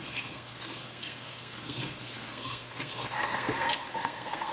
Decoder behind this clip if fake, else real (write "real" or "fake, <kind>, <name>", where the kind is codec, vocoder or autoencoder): fake, codec, SNAC